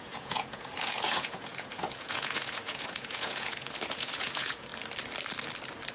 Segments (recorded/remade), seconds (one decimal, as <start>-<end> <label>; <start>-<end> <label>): 0.0-4.7 remade; 4.7-5.9 recorded